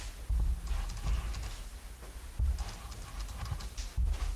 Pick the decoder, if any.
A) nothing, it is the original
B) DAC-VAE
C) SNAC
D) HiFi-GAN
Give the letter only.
A